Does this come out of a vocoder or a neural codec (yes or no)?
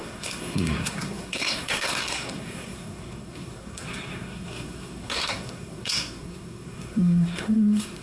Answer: yes